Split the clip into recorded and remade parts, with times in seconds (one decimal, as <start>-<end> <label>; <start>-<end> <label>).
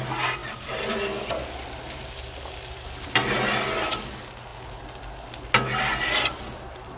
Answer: 0.0-0.4 recorded; 0.4-1.3 remade; 1.3-7.0 recorded